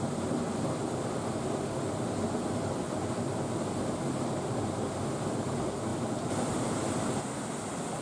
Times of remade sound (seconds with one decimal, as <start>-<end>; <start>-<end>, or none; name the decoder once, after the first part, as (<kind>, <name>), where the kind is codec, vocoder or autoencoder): none